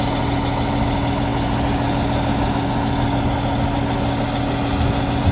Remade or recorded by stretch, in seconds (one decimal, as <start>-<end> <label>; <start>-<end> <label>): 0.0-5.3 recorded

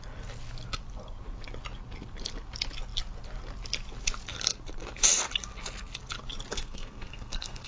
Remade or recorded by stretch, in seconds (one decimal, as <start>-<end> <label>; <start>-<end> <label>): 0.0-6.5 recorded; 6.5-7.7 remade

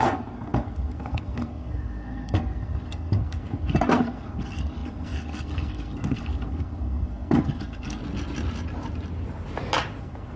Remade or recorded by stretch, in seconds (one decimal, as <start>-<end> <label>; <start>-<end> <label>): 0.0-8.0 remade; 8.0-10.0 recorded; 10.0-10.4 remade

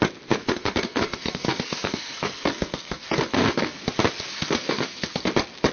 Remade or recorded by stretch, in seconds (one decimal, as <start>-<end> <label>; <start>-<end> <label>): 0.0-0.4 recorded; 0.4-3.8 remade; 3.8-4.3 recorded; 4.3-5.3 remade; 5.3-5.7 recorded

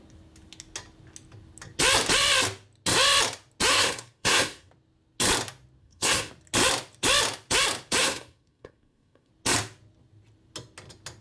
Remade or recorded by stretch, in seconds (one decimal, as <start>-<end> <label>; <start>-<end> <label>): 0.0-3.7 recorded; 3.7-4.7 remade; 4.7-5.8 recorded; 5.8-6.3 remade; 6.3-8.0 recorded; 8.0-9.3 remade; 9.3-11.2 recorded

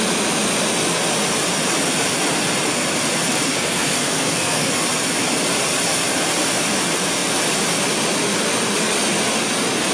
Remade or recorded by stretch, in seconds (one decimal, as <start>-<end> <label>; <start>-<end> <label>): 0.0-3.5 recorded; 3.5-4.7 remade; 4.7-9.9 recorded

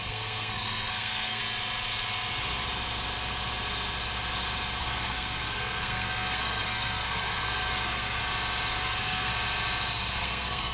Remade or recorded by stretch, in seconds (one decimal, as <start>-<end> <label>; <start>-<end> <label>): 0.0-1.4 remade; 1.4-4.8 recorded; 4.8-8.2 remade; 8.2-8.7 recorded; 8.7-9.3 remade; 9.3-10.1 recorded; 10.1-10.7 remade